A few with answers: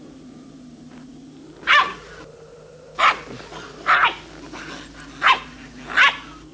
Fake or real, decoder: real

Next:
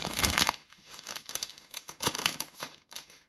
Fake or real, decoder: fake, autoencoder, DAC-VAE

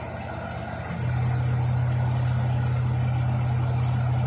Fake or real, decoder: real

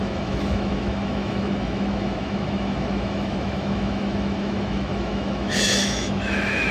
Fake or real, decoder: fake, autoencoder, DAC-VAE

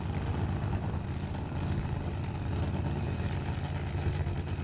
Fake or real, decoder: real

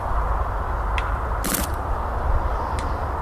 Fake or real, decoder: real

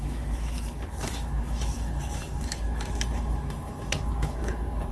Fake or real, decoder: fake, autoencoder, DAC-VAE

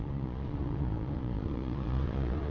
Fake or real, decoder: fake, vocoder, Vocos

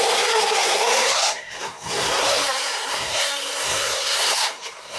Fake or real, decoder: fake, codec, SNAC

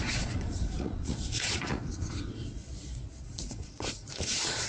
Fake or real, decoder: fake, vocoder, Vocos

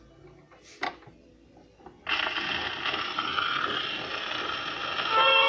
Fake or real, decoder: real